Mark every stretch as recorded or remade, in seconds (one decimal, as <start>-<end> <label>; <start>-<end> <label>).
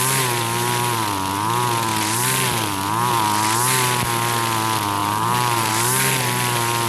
0.0-5.0 recorded; 5.0-5.7 remade; 5.7-6.9 recorded